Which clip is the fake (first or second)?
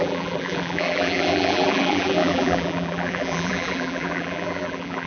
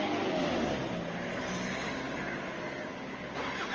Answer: first